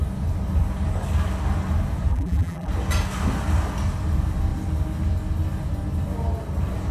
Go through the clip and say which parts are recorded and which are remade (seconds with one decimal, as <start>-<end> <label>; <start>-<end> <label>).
0.0-2.1 recorded; 2.1-2.7 remade; 2.7-6.9 recorded

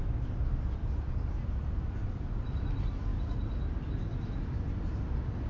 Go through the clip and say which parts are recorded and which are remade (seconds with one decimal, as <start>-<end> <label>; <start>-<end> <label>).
0.0-5.5 recorded